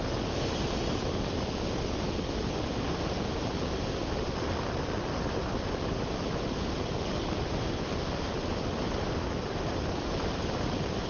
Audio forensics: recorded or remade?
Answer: recorded